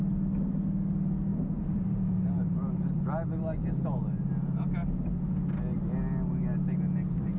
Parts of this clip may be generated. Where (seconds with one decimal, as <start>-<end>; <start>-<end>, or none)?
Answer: 1.3-5.3